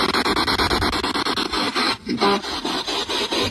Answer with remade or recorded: recorded